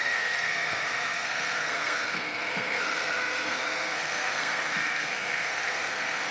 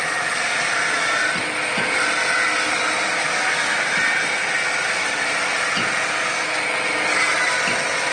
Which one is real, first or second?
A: second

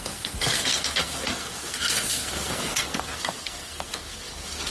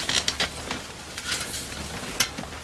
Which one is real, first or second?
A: second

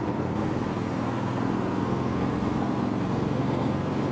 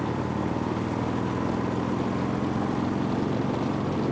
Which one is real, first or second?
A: second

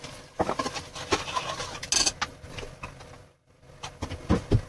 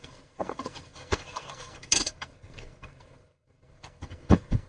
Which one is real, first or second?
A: first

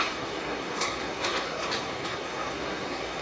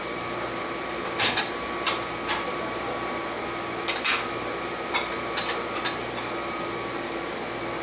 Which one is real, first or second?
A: second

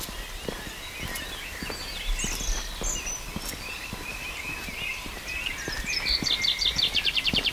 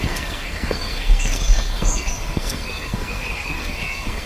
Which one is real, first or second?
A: first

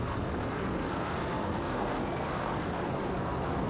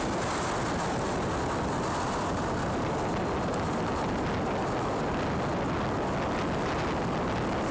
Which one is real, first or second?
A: second